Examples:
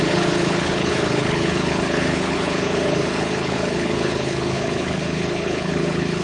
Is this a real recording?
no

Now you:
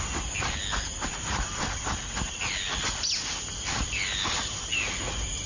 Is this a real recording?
yes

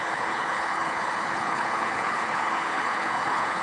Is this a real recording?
no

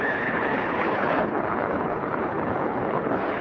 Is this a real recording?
no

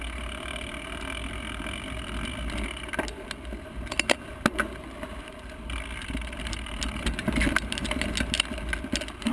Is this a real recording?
yes